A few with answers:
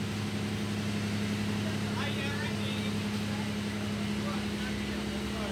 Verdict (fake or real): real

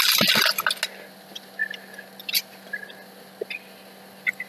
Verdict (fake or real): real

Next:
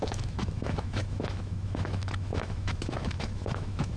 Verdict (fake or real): fake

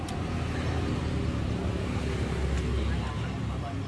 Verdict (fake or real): real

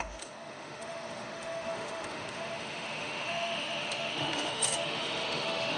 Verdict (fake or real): fake